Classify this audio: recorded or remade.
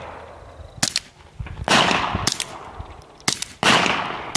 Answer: recorded